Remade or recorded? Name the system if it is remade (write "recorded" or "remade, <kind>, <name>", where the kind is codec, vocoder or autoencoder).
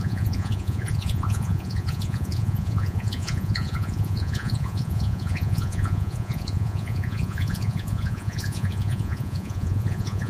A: remade, vocoder, Vocos